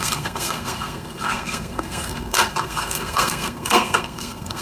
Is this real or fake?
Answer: fake